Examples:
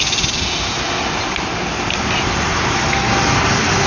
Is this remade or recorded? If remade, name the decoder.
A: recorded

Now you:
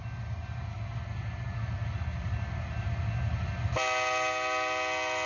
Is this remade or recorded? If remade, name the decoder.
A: recorded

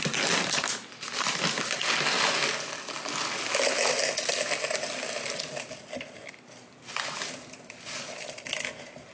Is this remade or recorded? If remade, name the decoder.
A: recorded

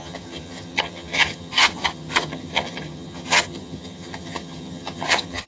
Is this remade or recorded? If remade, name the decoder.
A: remade, vocoder, HiFi-GAN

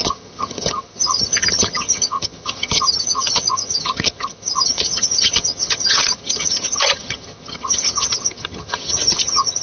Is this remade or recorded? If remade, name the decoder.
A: remade, vocoder, HiFi-GAN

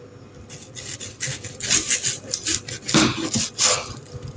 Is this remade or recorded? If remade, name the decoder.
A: recorded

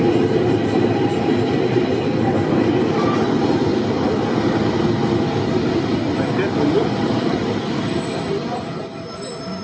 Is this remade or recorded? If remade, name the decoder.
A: recorded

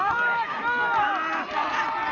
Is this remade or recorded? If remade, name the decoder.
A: recorded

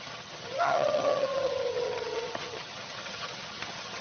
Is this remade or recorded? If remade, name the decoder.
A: remade, vocoder, HiFi-GAN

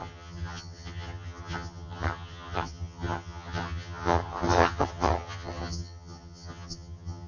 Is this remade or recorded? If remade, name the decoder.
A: remade, vocoder, HiFi-GAN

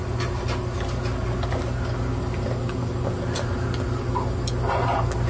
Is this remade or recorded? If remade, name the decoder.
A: recorded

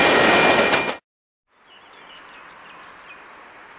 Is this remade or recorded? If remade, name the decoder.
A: recorded